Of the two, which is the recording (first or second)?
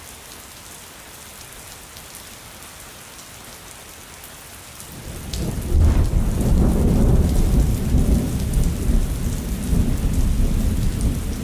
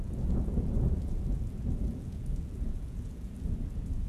first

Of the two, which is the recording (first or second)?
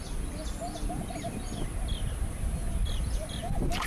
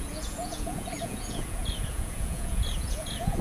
first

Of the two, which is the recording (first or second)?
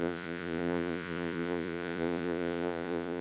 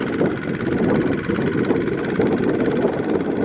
second